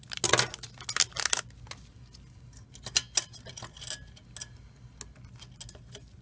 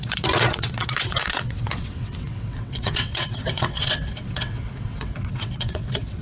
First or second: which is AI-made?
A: second